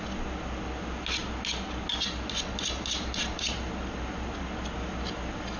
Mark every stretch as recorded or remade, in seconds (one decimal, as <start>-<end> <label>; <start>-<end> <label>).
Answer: 0.0-5.6 recorded